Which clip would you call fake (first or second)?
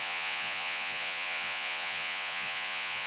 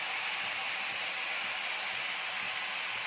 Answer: first